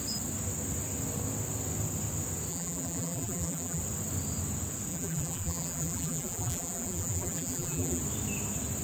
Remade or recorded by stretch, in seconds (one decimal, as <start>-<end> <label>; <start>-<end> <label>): 0.0-2.5 recorded; 2.5-3.8 remade; 3.8-4.9 recorded; 4.9-8.0 remade; 8.0-8.8 recorded